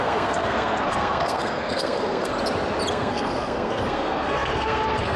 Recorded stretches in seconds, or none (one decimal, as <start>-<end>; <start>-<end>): 2.3-2.9